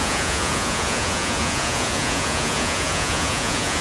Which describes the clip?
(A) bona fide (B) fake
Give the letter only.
B